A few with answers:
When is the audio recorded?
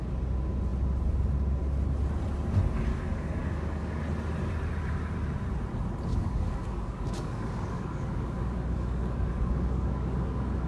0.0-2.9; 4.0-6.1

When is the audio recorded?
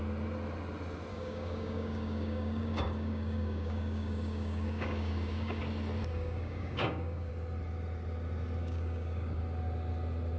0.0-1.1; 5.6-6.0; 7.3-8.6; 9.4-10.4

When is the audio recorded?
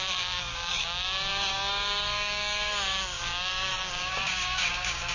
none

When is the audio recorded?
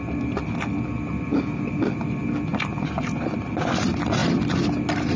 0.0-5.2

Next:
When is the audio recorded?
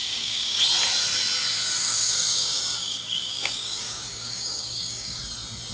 0.6-1.8; 5.2-5.7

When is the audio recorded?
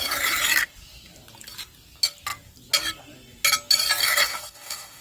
0.0-4.0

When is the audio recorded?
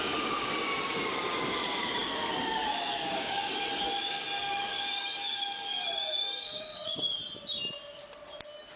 0.5-1.1; 7.2-8.8